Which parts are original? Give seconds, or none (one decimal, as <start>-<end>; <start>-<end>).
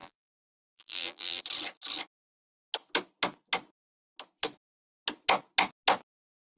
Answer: 1.4-6.6